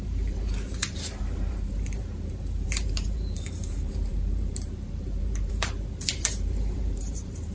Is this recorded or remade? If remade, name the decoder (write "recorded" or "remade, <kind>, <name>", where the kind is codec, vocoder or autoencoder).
remade, vocoder, BigVGAN v2